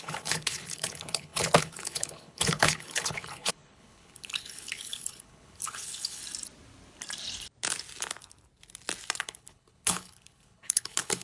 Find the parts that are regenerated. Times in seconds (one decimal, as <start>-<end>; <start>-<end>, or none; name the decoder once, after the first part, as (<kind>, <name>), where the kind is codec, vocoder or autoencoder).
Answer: 0.0-6.2 (codec, HILCodec); 9.2-11.2